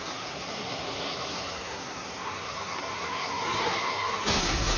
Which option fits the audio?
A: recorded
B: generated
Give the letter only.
B